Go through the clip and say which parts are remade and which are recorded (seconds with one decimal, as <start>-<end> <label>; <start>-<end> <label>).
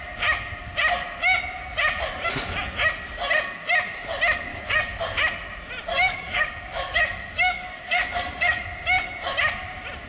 0.0-4.5 recorded; 4.5-5.0 remade; 5.0-5.9 recorded; 5.9-8.6 remade; 8.6-10.1 recorded